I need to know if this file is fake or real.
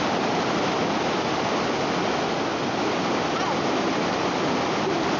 real